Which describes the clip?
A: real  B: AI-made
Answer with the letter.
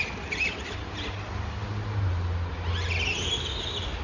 A